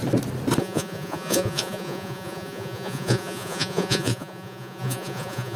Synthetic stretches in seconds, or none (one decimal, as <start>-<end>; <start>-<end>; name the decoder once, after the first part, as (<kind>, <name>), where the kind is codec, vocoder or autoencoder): 0.6-5.6 (vocoder, Vocos)